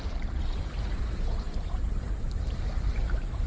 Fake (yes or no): yes